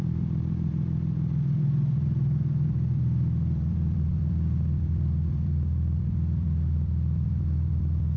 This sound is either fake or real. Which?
fake